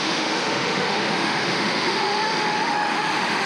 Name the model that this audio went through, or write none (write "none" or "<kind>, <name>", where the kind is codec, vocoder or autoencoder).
autoencoder, DAC-VAE